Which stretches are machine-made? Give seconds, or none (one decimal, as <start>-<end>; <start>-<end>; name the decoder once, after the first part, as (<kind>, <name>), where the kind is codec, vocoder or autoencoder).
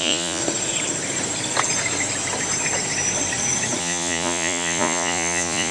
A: 0.0-0.4 (vocoder, Vocos); 3.8-5.7